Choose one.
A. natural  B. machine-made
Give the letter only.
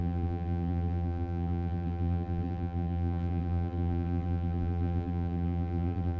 B